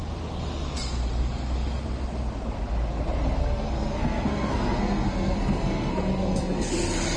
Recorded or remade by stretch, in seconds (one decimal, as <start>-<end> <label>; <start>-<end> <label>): 0.0-3.4 recorded; 3.4-6.7 remade; 6.7-7.2 recorded